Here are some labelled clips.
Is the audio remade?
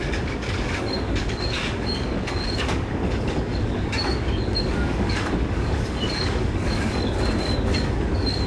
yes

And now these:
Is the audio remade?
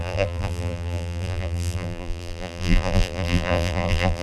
yes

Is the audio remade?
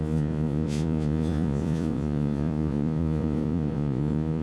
yes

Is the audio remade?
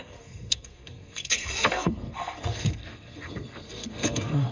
yes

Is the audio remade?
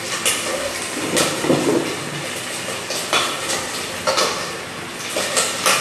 no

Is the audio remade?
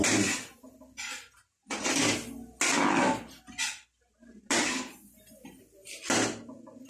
no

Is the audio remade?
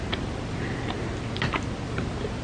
no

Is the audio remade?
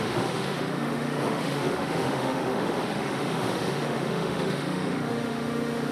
yes